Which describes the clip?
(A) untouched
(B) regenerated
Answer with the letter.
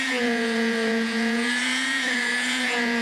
B